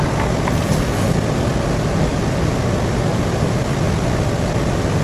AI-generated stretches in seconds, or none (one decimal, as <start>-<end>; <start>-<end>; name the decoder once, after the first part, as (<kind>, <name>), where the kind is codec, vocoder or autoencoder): none